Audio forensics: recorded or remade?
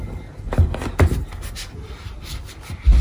recorded